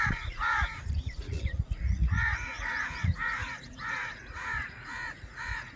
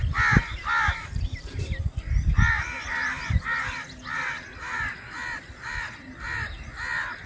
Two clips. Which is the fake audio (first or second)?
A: first